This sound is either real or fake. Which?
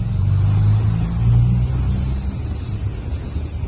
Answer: real